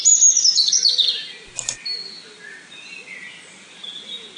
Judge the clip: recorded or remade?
recorded